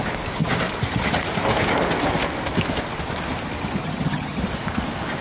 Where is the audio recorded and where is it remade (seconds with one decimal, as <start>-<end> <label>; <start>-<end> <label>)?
0.0-3.8 recorded; 3.8-4.4 remade; 4.4-5.2 recorded